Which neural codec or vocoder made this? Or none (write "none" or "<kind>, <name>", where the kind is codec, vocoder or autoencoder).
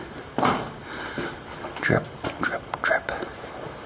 none